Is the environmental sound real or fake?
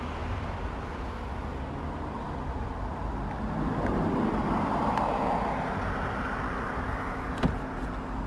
real